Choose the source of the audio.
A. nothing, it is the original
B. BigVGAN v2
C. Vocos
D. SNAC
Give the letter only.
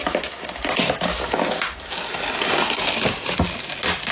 A